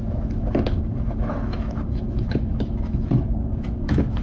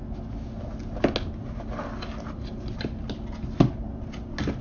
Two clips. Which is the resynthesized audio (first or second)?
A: first